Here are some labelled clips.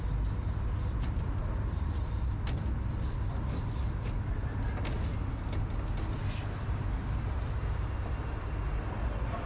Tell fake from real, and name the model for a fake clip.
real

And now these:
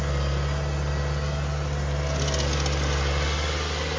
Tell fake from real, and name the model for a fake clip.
real